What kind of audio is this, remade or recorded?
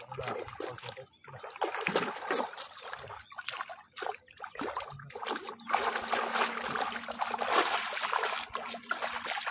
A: recorded